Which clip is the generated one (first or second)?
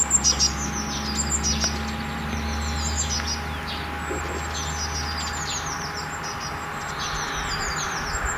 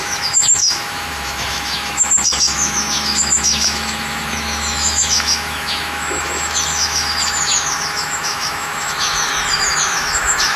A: second